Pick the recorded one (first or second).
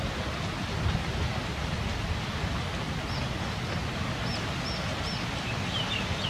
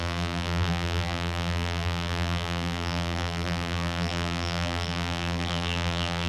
first